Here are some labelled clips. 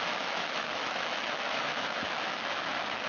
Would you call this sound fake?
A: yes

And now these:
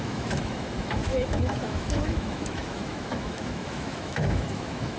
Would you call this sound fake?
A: yes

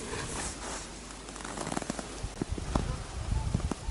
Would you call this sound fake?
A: no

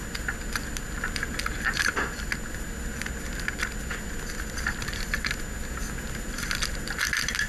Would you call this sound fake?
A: no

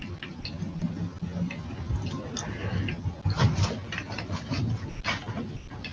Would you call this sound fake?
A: no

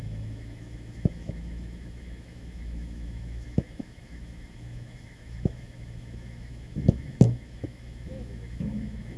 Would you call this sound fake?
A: yes